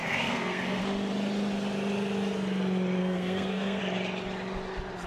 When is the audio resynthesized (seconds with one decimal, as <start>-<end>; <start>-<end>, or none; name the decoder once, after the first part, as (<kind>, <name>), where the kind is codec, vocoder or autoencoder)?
0.0-0.8 (codec, SNAC); 3.0-3.8